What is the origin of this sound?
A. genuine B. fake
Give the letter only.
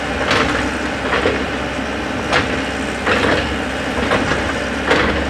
A